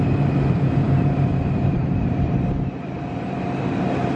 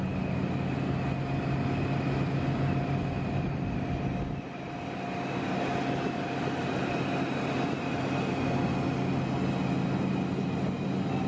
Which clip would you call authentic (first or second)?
second